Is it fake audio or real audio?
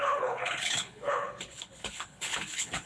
fake